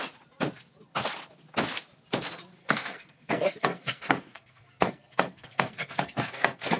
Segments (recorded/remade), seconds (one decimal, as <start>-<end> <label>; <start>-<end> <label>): 0.0-2.6 recorded; 2.6-6.8 remade